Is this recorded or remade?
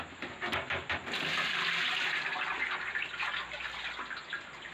recorded